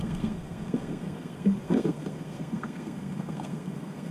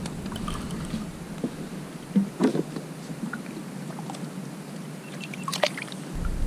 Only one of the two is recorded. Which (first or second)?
second